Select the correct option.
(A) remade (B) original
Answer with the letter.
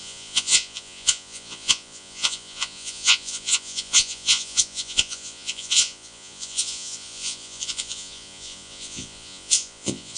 A